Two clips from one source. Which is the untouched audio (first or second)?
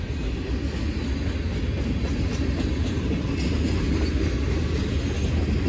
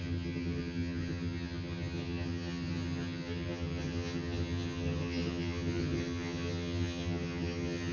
first